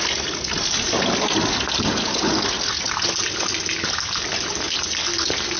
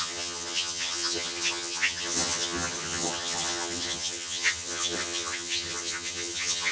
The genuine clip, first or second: first